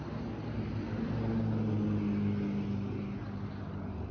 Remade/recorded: recorded